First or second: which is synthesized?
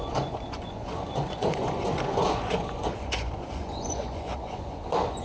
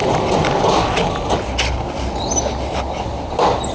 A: first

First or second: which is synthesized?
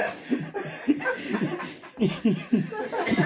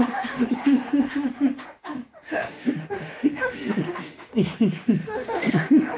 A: second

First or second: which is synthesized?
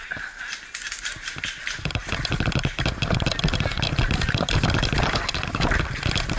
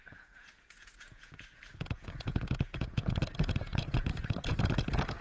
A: second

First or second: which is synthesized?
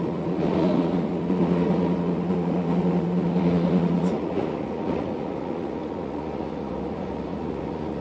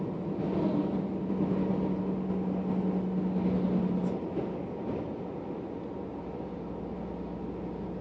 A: first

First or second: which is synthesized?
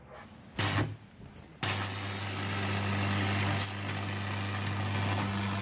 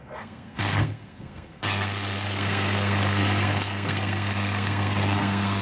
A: second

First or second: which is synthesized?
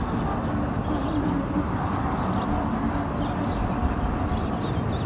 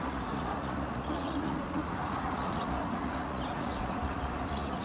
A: second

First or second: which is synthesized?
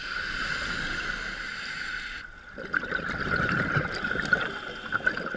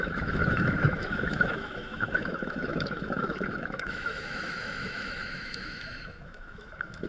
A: second